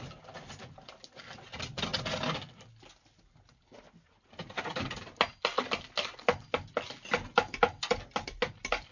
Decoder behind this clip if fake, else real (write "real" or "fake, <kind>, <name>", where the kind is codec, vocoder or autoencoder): real